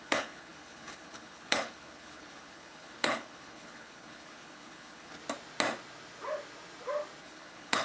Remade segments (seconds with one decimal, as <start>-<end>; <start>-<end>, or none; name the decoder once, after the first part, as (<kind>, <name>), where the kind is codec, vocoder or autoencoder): 0.0-5.2 (codec, HILCodec); 7.2-7.8